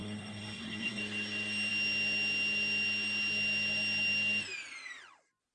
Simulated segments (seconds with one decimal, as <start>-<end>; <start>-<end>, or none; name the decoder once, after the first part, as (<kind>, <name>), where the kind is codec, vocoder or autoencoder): 0.0-1.0 (codec, SNAC)